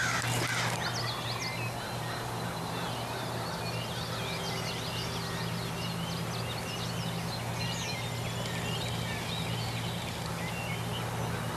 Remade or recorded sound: recorded